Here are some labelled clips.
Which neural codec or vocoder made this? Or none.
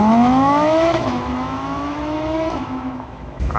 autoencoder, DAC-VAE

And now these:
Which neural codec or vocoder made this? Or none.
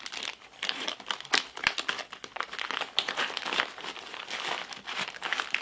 none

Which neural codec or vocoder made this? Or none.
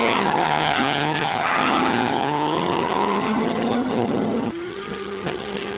vocoder, HiFi-GAN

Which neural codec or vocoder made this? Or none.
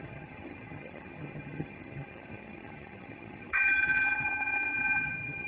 vocoder, HiFi-GAN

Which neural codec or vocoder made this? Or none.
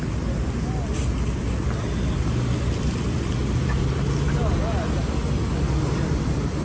none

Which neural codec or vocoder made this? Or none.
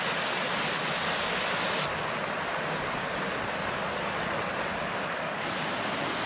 none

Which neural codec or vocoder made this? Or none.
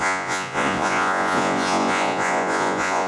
vocoder, Vocos